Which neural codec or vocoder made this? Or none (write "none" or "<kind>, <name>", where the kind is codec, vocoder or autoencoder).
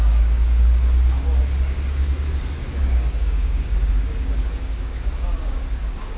codec, DAC